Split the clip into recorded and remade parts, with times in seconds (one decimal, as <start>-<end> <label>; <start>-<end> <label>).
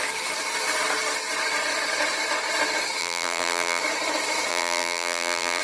0.0-3.0 recorded; 3.0-3.8 remade; 3.8-4.5 recorded; 4.5-5.6 remade